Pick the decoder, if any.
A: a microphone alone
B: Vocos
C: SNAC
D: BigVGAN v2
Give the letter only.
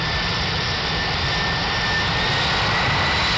A